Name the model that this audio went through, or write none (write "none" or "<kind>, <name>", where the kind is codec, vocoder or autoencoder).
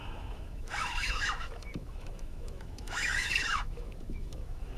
autoencoder, DAC-VAE